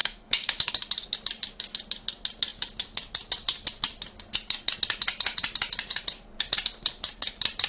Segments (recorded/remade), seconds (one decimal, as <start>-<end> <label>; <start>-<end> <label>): 0.0-0.7 remade; 0.7-7.7 recorded